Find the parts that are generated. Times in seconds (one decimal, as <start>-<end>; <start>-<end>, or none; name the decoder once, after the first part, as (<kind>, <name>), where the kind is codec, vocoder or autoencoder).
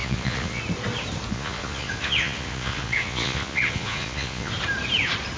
0.0-0.6 (vocoder, Vocos); 1.3-4.5